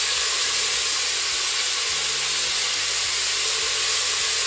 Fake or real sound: real